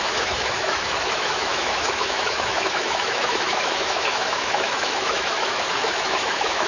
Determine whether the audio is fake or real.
fake